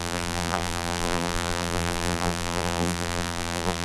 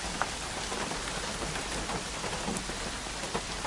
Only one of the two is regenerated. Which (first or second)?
first